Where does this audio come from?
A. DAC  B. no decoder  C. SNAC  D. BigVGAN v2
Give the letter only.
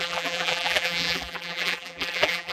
D